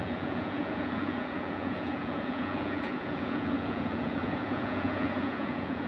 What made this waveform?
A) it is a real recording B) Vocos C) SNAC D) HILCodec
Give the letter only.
B